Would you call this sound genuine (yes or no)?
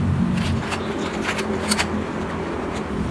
yes